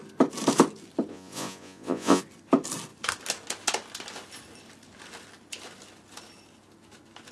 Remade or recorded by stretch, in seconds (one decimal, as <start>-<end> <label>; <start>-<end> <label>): 0.0-1.1 recorded; 1.1-2.2 remade; 2.2-7.3 recorded